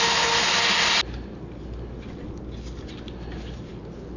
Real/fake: real